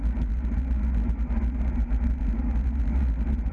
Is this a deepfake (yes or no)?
no